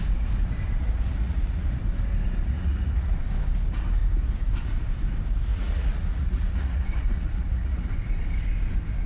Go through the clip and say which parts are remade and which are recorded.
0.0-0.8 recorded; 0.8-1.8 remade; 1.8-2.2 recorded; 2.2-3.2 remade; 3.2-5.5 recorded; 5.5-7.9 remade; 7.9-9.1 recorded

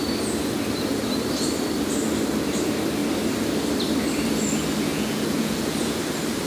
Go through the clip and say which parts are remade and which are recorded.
0.0-4.9 recorded; 4.9-6.0 remade; 6.0-6.5 recorded

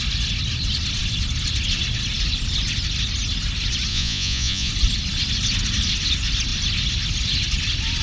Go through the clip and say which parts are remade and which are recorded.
0.0-3.9 recorded; 3.9-4.7 remade; 4.7-8.0 recorded

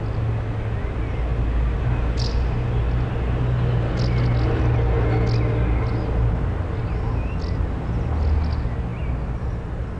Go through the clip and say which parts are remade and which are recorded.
0.0-10.0 recorded

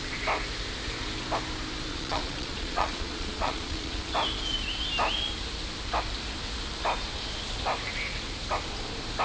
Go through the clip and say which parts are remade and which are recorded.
0.0-1.9 recorded; 1.9-4.1 remade; 4.1-9.2 recorded